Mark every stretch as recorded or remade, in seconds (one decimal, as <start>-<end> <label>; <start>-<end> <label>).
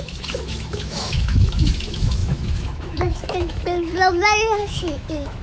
0.0-5.4 remade